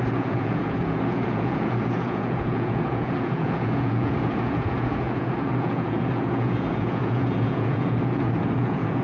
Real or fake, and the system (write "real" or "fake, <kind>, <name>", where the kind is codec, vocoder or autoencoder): fake, vocoder, Vocos